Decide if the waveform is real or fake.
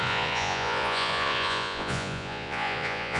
fake